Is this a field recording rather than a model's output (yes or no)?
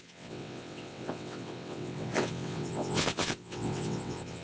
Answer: no